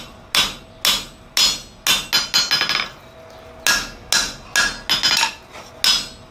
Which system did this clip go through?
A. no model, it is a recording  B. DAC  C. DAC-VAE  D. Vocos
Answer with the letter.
A